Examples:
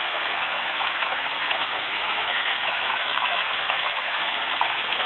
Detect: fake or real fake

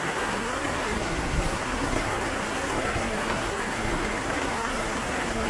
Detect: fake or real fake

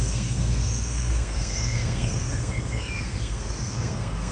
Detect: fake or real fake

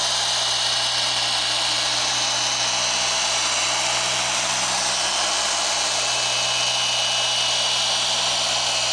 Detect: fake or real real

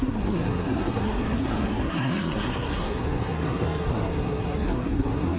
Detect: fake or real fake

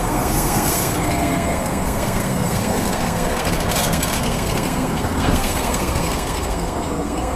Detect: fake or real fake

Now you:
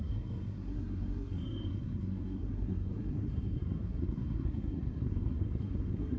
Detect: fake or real fake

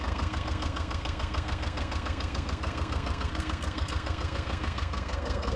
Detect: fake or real fake